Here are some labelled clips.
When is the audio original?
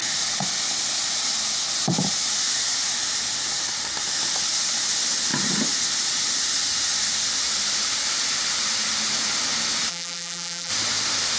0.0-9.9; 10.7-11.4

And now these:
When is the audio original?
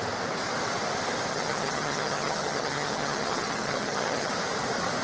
0.0-1.3; 4.3-5.0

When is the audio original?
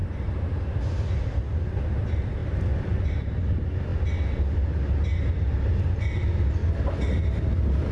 0.0-7.9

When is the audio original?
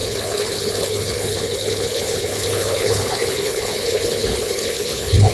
none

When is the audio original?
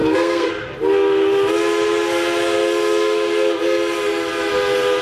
0.5-5.0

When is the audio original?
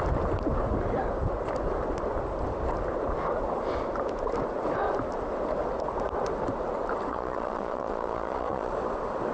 0.0-7.1; 8.7-9.3